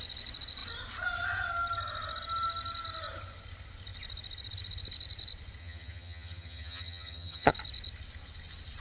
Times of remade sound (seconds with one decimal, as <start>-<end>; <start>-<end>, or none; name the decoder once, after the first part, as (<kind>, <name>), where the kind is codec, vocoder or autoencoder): 5.6-7.5 (vocoder, HiFi-GAN)